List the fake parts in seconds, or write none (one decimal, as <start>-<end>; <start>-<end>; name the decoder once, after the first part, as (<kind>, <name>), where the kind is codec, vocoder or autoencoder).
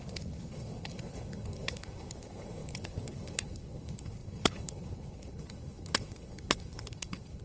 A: 0.0-7.4 (codec, HILCodec)